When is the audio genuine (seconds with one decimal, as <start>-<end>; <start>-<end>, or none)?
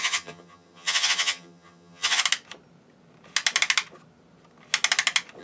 2.2-5.4